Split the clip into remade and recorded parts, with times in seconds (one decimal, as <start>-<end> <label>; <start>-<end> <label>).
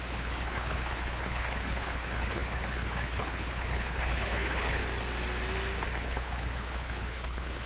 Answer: 0.0-4.8 remade; 4.8-6.0 recorded; 6.0-7.7 remade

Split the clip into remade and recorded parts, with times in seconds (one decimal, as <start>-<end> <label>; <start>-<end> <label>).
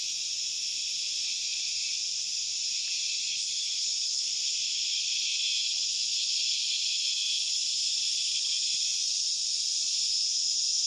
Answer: 0.0-3.3 recorded; 3.3-4.3 remade; 4.3-10.9 recorded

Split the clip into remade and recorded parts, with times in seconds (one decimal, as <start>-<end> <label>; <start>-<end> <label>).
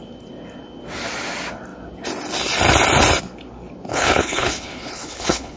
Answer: 0.0-3.9 recorded; 3.9-5.6 remade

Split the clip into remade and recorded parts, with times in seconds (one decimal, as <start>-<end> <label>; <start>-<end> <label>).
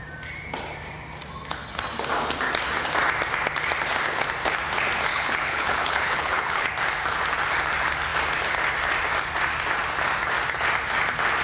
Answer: 0.0-5.1 recorded; 5.1-6.7 remade; 6.7-11.4 recorded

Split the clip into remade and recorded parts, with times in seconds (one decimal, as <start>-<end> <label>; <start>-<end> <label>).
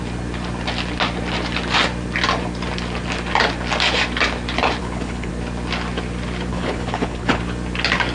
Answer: 0.0-4.8 recorded; 4.8-5.3 remade; 5.3-6.5 recorded; 6.5-7.4 remade; 7.4-8.1 recorded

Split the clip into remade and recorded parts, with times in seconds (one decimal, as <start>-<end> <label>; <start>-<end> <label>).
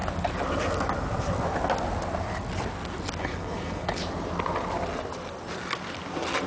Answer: 0.0-3.2 recorded; 3.2-4.0 remade; 4.0-6.5 recorded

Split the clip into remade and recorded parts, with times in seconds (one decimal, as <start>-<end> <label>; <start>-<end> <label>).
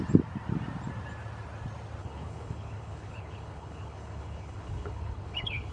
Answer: 0.0-2.0 recorded; 2.0-5.7 remade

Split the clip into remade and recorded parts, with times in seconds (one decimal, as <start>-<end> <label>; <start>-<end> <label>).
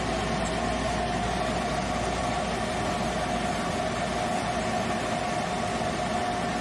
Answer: 0.0-6.6 recorded